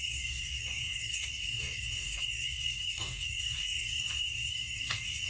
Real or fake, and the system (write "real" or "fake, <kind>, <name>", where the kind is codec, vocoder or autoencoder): fake, codec, DAC